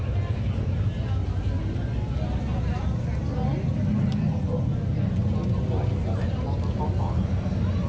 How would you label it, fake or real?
real